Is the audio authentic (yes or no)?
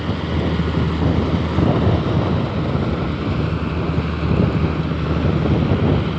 yes